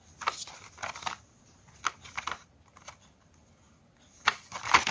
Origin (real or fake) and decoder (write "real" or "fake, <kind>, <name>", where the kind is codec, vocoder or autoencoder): real